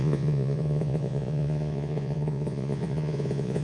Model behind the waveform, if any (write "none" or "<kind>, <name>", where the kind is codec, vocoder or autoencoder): vocoder, Vocos